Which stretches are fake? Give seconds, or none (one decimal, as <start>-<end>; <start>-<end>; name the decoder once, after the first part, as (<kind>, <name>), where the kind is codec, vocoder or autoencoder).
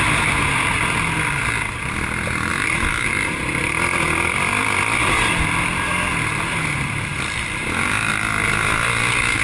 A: none